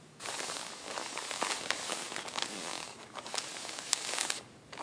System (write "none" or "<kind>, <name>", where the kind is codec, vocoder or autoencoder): codec, DAC